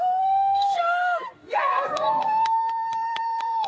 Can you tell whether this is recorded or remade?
remade